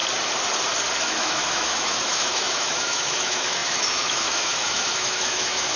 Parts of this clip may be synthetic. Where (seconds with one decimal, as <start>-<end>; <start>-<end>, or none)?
1.0-5.8